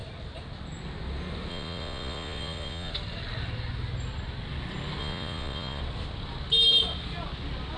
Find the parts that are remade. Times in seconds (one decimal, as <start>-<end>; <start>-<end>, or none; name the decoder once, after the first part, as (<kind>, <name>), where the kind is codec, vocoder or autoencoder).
1.5-2.9 (vocoder, Vocos); 5.0-5.8